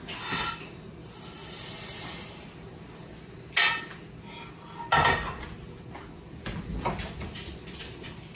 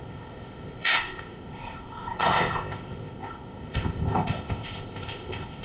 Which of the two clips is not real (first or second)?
second